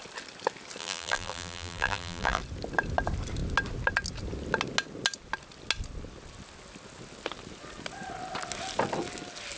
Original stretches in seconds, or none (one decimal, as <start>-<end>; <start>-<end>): 0.0-0.8; 2.4-9.6